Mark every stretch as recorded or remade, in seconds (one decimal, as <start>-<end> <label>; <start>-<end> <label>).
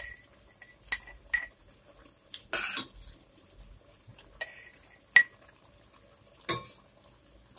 0.0-7.6 recorded